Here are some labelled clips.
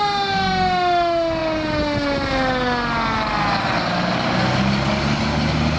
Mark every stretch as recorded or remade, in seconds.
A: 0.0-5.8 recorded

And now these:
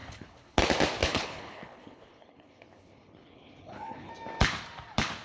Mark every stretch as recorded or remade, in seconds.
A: 0.0-0.6 remade; 0.6-1.0 recorded; 1.0-4.1 remade; 4.1-5.2 recorded

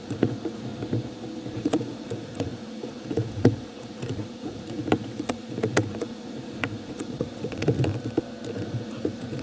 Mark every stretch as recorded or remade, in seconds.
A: 0.0-0.7 remade; 0.7-1.5 recorded; 1.5-7.9 remade; 7.9-8.5 recorded; 8.5-9.4 remade

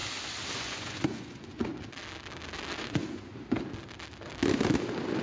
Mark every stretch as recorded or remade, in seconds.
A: 0.0-0.6 recorded; 0.6-1.7 remade; 1.7-2.8 recorded; 2.8-3.3 remade; 3.3-5.2 recorded

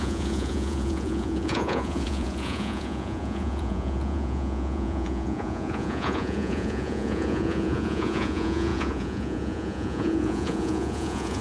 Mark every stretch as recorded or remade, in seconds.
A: 0.0-11.4 remade

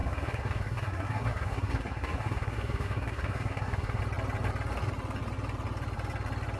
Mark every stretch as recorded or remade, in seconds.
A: 0.0-4.0 remade; 4.0-6.6 recorded

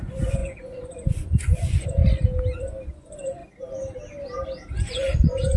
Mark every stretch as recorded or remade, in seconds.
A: 0.0-2.0 remade; 2.0-2.9 recorded; 2.9-3.4 remade; 3.4-4.8 recorded; 4.8-5.6 remade